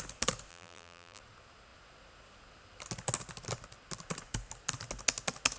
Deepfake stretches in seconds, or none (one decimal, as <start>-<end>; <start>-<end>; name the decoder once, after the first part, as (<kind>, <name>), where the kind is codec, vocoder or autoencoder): 0.5-1.2 (vocoder, BigVGAN v2)

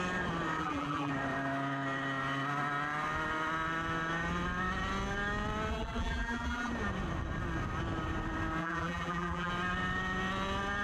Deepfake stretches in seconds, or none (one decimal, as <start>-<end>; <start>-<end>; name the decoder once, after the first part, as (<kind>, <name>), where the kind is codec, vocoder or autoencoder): 0.6-1.1 (vocoder, BigVGAN v2); 5.7-6.7; 8.6-9.5

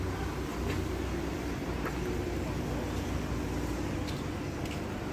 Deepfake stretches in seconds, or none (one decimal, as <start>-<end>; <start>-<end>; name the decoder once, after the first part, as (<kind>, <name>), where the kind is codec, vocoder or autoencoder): none

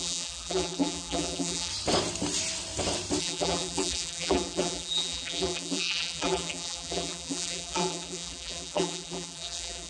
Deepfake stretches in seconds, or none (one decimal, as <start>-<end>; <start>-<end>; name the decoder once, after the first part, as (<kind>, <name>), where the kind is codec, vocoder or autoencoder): 0.0-1.7 (vocoder, BigVGAN v2); 3.2-9.9

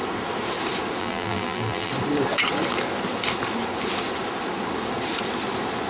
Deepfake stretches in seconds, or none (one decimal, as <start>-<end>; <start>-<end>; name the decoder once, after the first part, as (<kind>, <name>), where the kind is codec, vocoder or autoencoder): 1.0-1.9 (vocoder, BigVGAN v2)

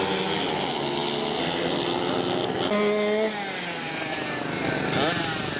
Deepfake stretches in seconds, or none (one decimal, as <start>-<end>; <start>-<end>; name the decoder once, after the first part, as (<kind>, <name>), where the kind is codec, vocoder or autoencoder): none

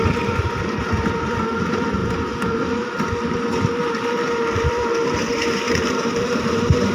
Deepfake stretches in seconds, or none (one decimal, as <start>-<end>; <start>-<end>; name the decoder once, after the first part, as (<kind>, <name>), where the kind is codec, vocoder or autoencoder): 0.0-2.0 (vocoder, BigVGAN v2); 3.8-6.9